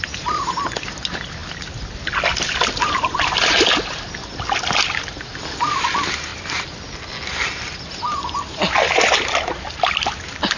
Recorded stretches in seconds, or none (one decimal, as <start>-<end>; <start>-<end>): 0.0-10.6